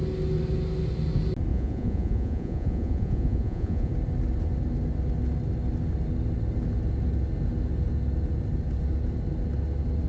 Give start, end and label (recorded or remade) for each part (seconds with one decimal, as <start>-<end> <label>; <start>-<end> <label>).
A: 0.0-1.5 recorded; 1.5-3.9 remade; 3.9-10.1 recorded

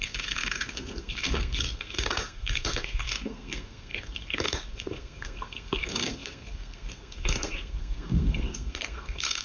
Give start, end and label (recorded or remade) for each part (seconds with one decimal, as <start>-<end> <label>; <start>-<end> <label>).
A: 0.0-9.4 remade

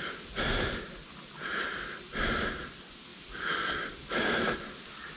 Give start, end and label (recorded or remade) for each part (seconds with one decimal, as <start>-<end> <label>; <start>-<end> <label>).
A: 0.0-3.1 recorded; 3.1-3.7 remade; 3.7-5.2 recorded

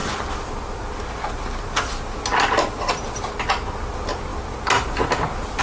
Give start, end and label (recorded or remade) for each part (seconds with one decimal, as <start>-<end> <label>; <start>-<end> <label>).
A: 0.0-5.6 recorded

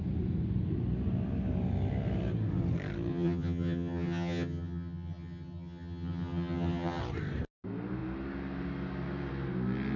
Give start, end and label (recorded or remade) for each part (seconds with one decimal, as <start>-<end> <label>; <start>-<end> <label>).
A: 0.0-3.1 recorded; 3.1-7.0 remade; 7.0-10.0 recorded

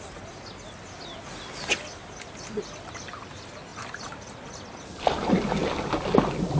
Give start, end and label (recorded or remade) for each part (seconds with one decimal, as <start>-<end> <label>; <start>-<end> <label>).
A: 0.0-6.6 recorded